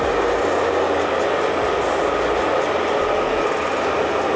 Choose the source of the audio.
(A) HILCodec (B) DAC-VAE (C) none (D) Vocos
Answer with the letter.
C